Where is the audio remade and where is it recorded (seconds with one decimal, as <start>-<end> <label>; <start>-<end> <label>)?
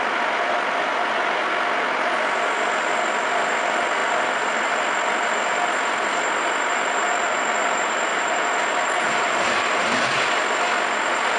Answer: 0.0-8.1 recorded; 8.1-10.3 remade; 10.3-11.4 recorded